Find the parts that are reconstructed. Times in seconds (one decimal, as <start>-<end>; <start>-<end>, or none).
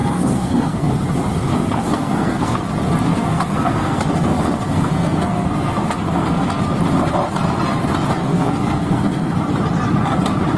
0.0-0.9; 1.5-2.7; 3.1-6.6; 8.2-9.4